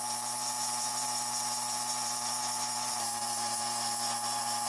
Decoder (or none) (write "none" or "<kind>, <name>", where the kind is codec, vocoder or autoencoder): vocoder, BigVGAN v2